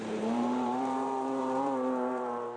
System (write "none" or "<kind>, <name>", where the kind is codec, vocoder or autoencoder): vocoder, BigVGAN v2